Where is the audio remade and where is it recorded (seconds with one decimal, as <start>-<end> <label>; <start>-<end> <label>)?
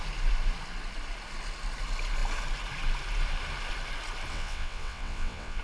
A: 0.0-4.3 recorded; 4.3-5.6 remade